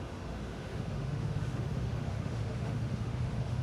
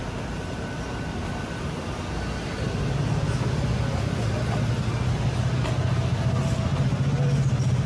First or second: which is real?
second